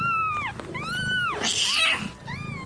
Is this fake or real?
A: real